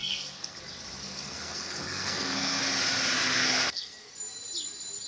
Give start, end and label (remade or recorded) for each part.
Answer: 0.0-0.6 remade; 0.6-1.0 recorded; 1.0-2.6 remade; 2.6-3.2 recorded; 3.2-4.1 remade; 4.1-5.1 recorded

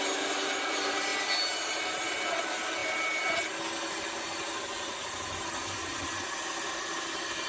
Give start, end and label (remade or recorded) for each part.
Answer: 0.0-7.5 recorded

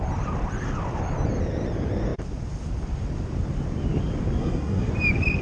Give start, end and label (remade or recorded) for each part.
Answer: 0.0-4.4 recorded; 4.4-4.9 remade; 4.9-5.4 recorded

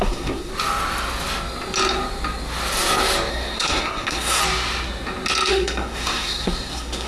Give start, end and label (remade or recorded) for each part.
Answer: 0.0-0.5 remade; 0.5-3.3 recorded; 3.3-4.4 remade; 4.4-5.5 recorded; 5.5-7.1 remade

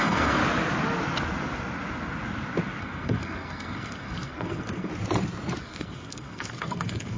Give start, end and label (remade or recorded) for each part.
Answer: 0.0-0.4 remade; 0.4-2.8 recorded; 2.8-4.9 remade; 4.9-5.6 recorded; 5.6-7.2 remade